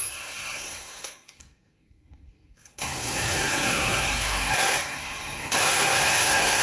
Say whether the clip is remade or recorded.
remade